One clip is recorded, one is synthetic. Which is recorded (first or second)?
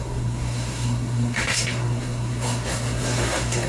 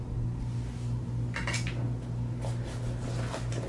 second